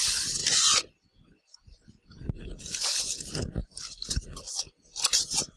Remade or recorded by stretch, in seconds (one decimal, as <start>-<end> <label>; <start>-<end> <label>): 0.0-5.6 recorded